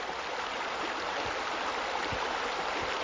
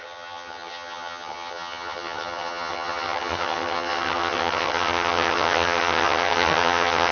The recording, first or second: first